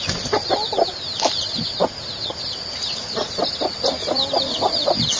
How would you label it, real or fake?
real